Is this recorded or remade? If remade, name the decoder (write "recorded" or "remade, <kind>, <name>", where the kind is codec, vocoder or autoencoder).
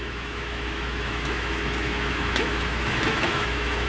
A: remade, autoencoder, DAC-VAE